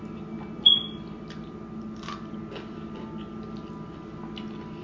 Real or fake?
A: real